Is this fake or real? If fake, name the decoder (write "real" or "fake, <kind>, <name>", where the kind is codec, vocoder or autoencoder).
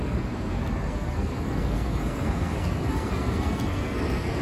fake, codec, SNAC